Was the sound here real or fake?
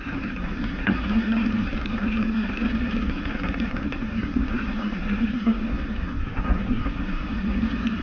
fake